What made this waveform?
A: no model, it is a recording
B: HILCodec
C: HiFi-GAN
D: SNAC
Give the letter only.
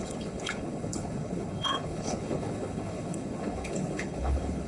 B